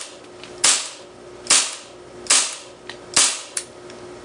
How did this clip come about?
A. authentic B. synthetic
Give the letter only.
A